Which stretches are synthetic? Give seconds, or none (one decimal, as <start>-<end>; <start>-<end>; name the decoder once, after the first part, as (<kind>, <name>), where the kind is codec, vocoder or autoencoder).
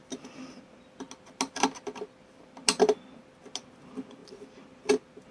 none